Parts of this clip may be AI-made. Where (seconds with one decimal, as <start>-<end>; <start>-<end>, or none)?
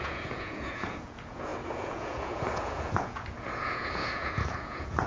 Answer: 0.0-5.1